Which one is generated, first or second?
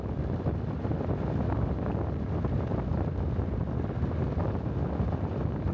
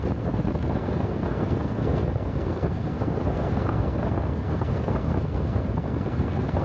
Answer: second